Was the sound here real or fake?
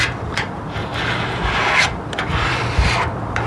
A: fake